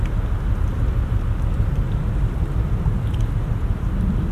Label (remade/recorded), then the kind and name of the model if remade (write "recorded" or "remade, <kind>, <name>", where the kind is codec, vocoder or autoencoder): recorded